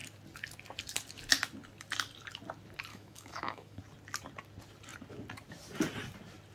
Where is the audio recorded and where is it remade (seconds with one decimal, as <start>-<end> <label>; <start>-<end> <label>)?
0.0-2.9 recorded; 2.9-3.8 remade; 3.8-6.5 recorded